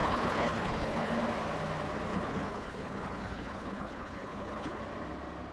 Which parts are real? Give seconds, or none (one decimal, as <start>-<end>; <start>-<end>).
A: 1.1-2.1; 4.8-5.5